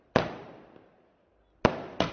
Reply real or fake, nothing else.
real